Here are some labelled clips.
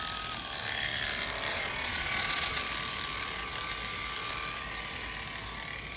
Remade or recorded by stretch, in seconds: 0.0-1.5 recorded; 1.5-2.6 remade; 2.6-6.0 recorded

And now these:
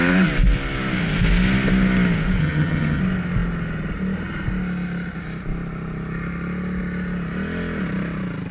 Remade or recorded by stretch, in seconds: 0.0-2.4 recorded; 2.4-3.0 remade; 3.0-8.5 recorded

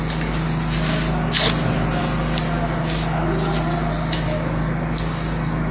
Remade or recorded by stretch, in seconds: 0.0-5.7 recorded